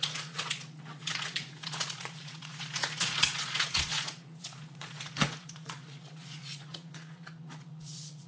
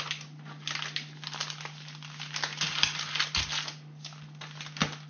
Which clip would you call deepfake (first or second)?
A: first